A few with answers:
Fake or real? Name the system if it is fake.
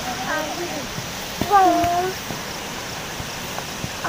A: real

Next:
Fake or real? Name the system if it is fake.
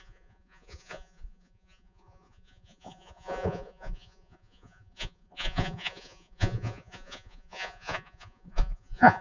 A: fake, vocoder, Vocos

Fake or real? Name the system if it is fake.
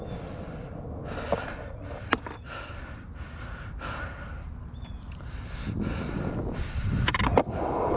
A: real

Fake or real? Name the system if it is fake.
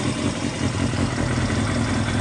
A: real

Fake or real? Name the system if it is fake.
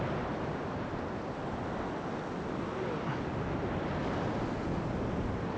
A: real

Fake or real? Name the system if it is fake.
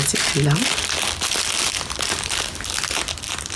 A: real